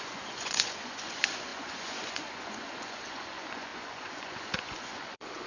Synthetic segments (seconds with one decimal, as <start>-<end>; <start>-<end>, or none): 0.0-5.5